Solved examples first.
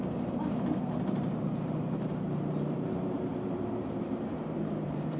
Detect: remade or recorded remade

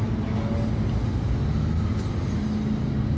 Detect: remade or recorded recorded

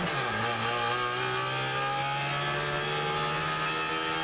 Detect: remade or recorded recorded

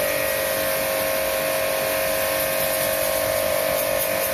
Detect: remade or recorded recorded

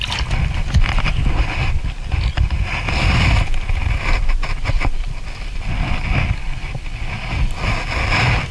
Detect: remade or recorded recorded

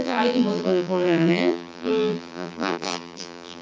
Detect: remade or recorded remade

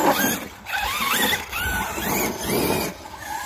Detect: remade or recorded recorded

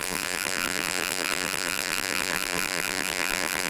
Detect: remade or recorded remade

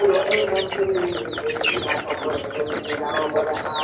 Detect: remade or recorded recorded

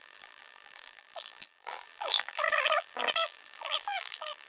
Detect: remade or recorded remade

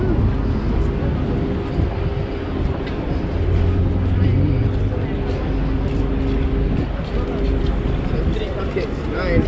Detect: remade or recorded recorded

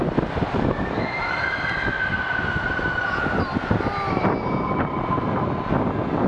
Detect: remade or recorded recorded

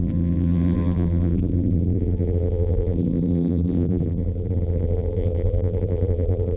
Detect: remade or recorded remade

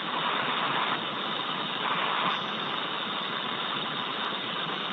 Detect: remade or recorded recorded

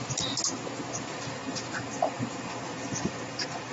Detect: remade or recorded recorded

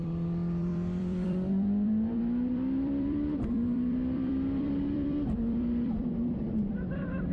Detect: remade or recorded remade